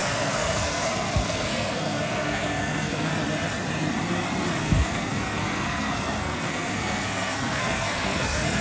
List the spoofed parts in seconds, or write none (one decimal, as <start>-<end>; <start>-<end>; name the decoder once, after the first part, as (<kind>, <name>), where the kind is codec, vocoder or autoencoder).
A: 0.0-3.1 (codec, SNAC); 4.6-8.6